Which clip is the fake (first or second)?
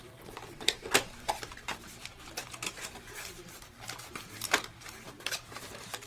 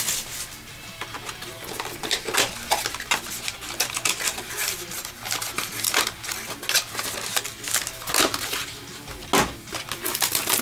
first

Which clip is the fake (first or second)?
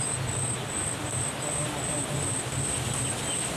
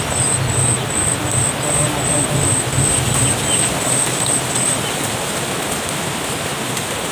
first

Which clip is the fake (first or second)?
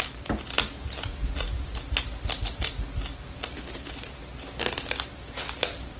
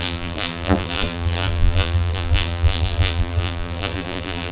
second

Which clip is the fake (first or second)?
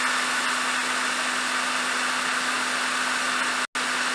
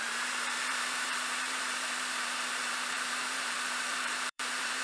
second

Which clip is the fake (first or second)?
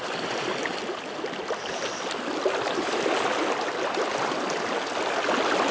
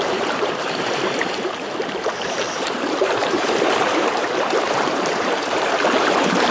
second